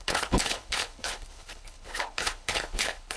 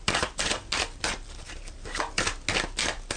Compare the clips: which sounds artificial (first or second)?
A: first